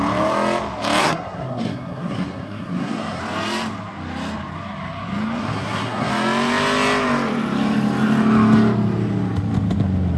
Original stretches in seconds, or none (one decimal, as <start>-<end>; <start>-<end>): 0.0-1.0; 3.2-5.4; 6.1-10.2

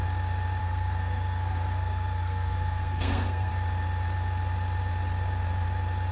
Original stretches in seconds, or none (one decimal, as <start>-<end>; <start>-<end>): 0.0-0.6; 3.5-6.1